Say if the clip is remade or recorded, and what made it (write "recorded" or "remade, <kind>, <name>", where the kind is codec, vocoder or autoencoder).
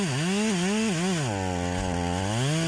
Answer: recorded